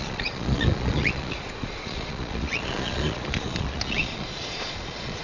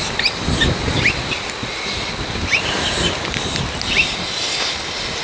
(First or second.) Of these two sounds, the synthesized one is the first